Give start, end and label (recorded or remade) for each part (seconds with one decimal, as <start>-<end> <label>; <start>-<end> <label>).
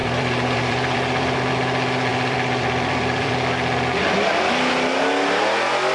0.0-1.5 remade; 1.5-2.1 recorded; 2.1-3.3 remade; 3.3-5.9 recorded